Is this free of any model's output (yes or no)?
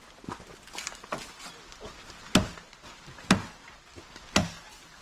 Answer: yes